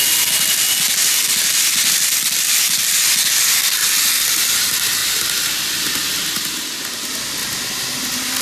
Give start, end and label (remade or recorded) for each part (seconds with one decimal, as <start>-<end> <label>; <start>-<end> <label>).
0.0-3.8 remade; 3.8-4.4 recorded; 4.4-5.0 remade; 5.0-7.0 recorded; 7.0-7.4 remade; 7.4-8.4 recorded